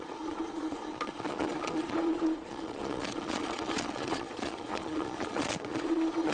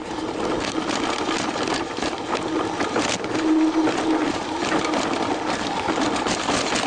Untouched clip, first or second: second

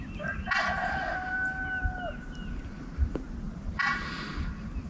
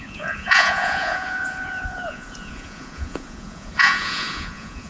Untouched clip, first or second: first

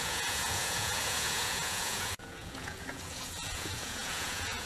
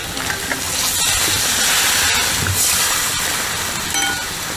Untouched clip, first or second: second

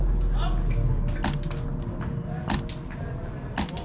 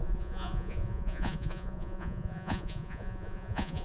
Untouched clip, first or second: first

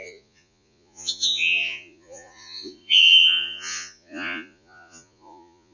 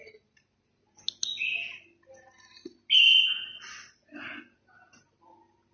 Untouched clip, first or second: second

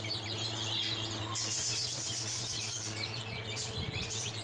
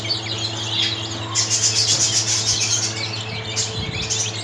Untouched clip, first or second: second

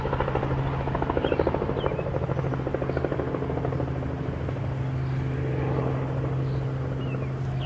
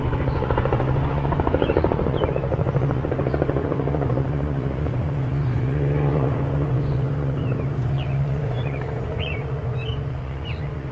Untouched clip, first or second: first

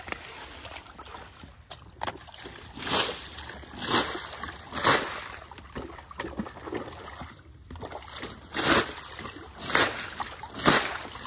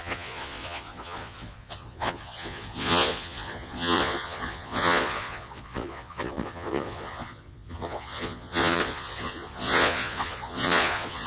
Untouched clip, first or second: first